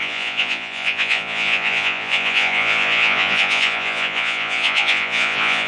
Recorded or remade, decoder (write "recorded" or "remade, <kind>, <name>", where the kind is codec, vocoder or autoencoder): remade, vocoder, Vocos